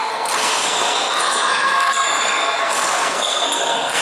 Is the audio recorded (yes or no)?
no